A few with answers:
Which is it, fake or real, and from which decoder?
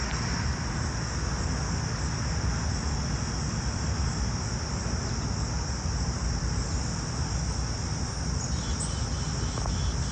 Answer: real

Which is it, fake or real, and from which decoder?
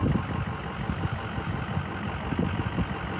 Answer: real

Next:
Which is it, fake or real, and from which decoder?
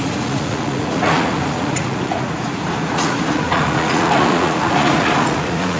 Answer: fake, vocoder, Vocos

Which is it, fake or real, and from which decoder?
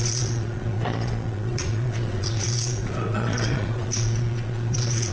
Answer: fake, vocoder, Vocos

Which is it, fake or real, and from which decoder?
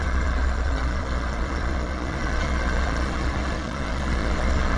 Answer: fake, vocoder, Vocos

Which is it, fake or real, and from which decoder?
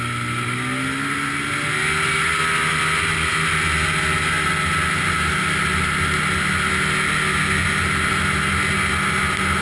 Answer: real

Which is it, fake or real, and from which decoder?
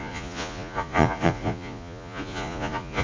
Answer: fake, vocoder, Vocos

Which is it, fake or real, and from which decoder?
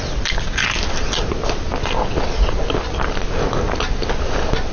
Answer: real